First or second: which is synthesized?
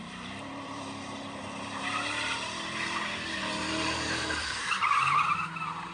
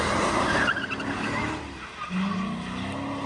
first